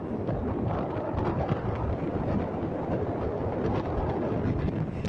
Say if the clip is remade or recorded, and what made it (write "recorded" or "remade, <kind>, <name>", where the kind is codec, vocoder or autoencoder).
recorded